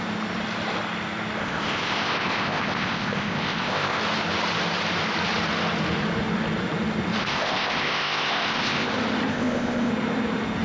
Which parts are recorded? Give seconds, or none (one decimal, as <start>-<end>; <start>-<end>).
0.0-1.4; 4.0-7.2; 8.9-9.3; 9.9-10.6